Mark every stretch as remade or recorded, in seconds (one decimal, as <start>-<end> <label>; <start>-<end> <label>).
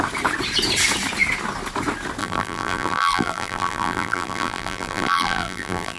0.0-2.2 recorded; 2.2-6.0 remade